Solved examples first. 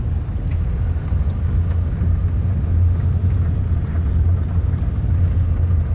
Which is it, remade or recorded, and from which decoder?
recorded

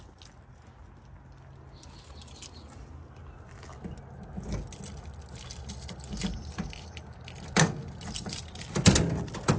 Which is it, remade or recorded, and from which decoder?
recorded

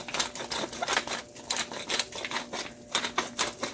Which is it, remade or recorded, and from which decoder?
recorded